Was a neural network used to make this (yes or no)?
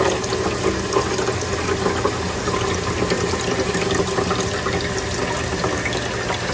no